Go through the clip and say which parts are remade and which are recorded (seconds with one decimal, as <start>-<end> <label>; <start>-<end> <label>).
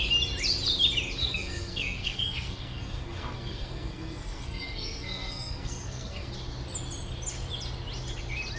0.0-1.2 recorded; 1.2-6.3 remade; 6.3-8.6 recorded